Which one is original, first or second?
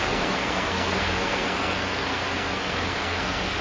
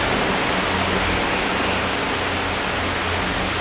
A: second